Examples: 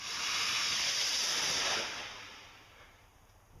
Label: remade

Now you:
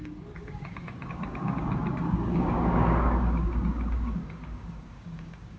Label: remade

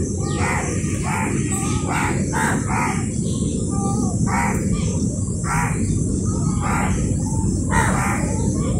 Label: recorded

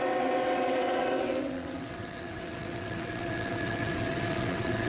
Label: remade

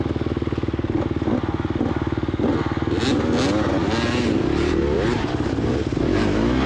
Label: recorded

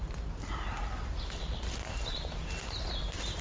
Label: recorded